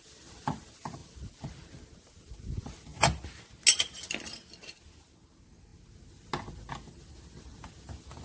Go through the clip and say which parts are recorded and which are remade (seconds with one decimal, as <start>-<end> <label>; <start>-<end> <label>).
0.0-8.2 recorded

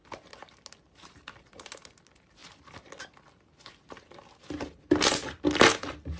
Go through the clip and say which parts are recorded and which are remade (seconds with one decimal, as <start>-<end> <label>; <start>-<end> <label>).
0.0-6.2 recorded

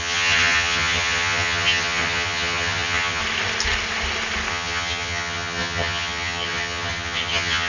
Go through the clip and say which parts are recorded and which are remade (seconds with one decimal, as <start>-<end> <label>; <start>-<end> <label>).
0.0-3.2 remade; 3.2-4.5 recorded; 4.5-7.7 remade

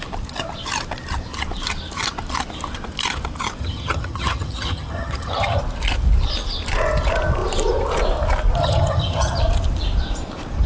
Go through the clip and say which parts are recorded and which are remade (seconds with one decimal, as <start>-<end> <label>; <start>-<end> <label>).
0.0-3.6 recorded; 3.6-5.6 remade; 5.6-8.6 recorded; 8.6-9.4 remade; 9.4-10.7 recorded

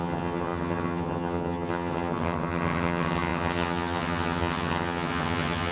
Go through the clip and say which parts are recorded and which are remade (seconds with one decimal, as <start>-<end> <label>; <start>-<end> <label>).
0.0-5.7 remade

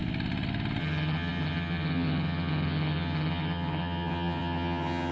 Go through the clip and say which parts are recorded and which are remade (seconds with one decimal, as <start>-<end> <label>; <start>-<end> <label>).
0.0-0.8 recorded; 0.8-5.1 remade

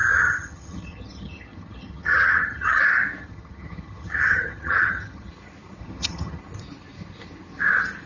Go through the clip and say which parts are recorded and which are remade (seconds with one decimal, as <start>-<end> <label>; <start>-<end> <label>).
0.0-2.8 remade; 2.8-3.2 recorded; 3.2-5.3 remade; 5.3-5.8 recorded; 5.8-6.4 remade; 6.4-8.1 recorded